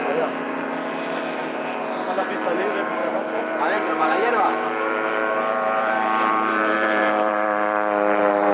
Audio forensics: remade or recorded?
remade